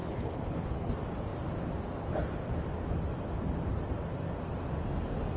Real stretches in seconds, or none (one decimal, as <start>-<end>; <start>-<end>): 0.9-5.4